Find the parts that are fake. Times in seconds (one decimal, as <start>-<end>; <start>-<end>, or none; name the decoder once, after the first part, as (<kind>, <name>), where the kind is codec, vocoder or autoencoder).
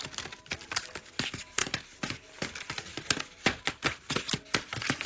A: none